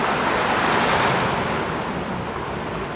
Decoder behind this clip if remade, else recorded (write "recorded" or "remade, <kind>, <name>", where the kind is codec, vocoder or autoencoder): recorded